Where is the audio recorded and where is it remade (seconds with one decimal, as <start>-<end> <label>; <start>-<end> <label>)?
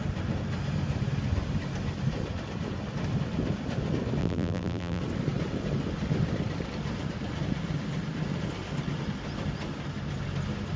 0.0-4.2 recorded; 4.2-5.0 remade; 5.0-10.8 recorded